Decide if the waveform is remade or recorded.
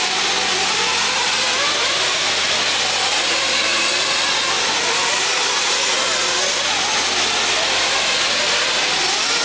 recorded